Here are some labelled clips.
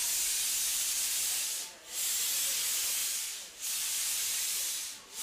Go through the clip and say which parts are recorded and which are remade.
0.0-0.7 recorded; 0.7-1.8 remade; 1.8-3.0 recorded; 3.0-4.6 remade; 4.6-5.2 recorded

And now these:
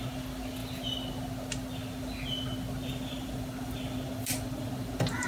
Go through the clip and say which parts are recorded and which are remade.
0.0-5.3 recorded

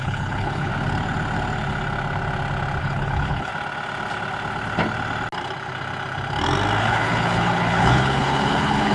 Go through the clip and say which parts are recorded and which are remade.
0.0-0.7 remade; 0.7-2.8 recorded; 2.8-3.5 remade; 3.5-6.8 recorded; 6.8-8.9 remade